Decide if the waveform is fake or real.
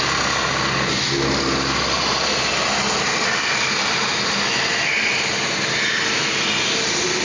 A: real